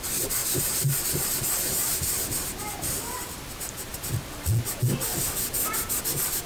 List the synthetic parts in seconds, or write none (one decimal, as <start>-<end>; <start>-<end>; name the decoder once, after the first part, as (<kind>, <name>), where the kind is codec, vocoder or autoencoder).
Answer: none